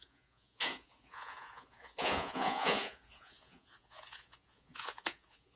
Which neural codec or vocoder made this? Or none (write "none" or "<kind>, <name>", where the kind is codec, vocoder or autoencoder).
vocoder, Vocos